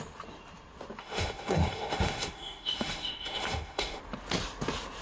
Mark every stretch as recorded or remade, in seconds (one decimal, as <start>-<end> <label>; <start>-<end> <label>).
0.0-1.0 recorded; 1.0-4.0 remade; 4.0-5.0 recorded